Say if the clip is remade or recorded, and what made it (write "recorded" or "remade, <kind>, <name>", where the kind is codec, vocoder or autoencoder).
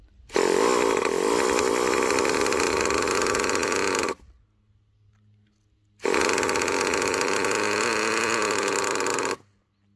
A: recorded